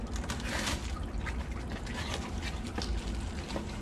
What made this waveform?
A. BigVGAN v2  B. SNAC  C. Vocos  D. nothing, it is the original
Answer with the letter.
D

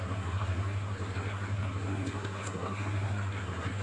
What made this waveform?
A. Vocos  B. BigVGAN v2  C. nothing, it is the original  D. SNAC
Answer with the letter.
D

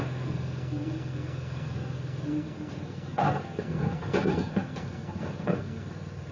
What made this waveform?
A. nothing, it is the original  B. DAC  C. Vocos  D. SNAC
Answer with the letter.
D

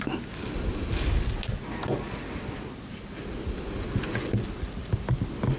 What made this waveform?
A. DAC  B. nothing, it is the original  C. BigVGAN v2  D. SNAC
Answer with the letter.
B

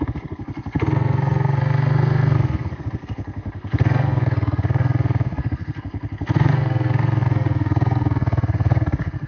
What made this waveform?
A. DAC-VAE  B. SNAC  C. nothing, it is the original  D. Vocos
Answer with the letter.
B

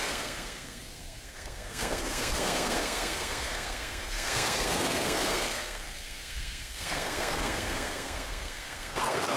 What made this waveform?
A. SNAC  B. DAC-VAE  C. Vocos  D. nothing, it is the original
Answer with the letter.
A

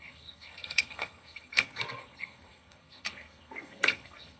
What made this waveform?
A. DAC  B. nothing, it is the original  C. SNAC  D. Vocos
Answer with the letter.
C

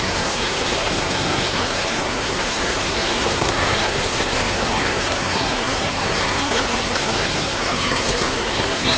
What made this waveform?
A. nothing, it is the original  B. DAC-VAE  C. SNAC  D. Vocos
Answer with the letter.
C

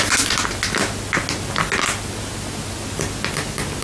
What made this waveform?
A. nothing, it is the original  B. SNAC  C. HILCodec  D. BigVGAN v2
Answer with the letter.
A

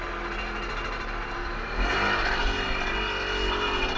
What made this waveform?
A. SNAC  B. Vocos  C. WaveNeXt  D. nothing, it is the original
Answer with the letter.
D